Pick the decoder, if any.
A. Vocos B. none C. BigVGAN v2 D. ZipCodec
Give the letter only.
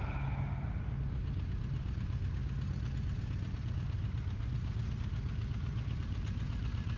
B